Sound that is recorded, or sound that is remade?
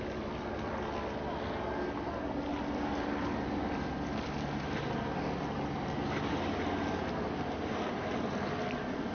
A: recorded